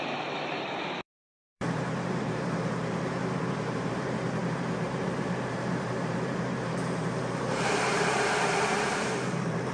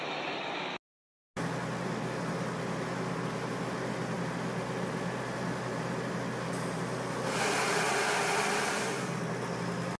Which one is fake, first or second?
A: first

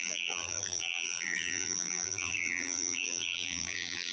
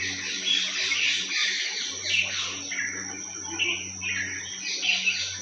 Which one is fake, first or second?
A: first